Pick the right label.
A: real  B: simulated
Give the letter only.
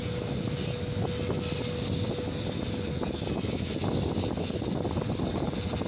A